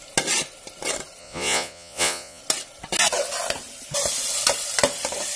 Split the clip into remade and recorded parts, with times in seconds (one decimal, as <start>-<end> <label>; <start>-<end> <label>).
0.0-1.2 recorded; 1.2-2.4 remade; 2.4-5.4 recorded